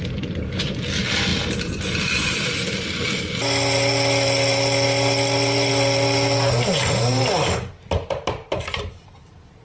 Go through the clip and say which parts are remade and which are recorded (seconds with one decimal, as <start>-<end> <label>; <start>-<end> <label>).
0.0-9.6 recorded